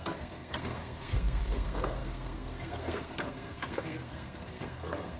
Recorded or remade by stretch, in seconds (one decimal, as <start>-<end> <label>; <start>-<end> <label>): 0.0-5.2 remade